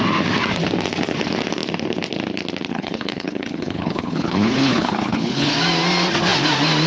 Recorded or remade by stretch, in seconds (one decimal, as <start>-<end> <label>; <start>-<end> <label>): 0.0-2.7 recorded; 2.7-5.5 remade; 5.5-6.9 recorded